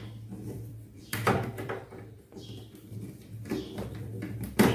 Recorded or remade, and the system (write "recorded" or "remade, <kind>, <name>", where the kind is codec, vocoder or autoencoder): remade, vocoder, BigVGAN v2